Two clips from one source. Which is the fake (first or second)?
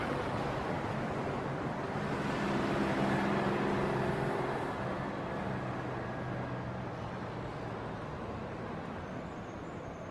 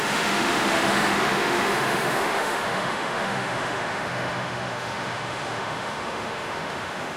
second